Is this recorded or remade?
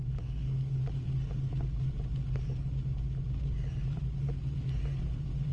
recorded